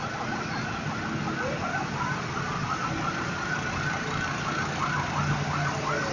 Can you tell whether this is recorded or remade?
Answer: recorded